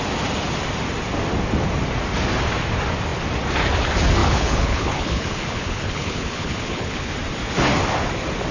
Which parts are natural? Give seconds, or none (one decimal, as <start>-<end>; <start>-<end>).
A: 0.0-4.2; 7.1-8.5